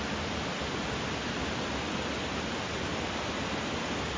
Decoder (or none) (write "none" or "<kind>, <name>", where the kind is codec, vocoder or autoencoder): none